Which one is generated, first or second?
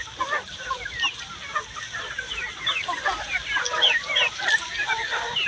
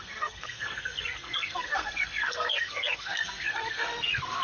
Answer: second